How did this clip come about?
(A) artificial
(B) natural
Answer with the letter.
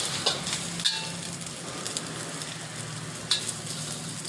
B